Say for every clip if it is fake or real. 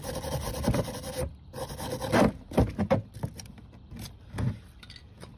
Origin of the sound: real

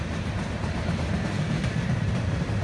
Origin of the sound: real